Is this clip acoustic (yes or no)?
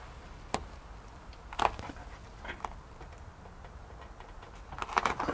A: yes